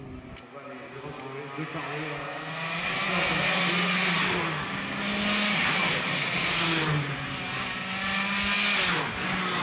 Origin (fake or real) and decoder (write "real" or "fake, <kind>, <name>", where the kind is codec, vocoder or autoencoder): real